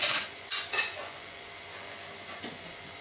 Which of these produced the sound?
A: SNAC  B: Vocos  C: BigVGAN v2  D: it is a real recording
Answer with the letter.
B